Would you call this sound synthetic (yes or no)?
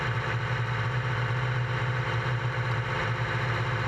no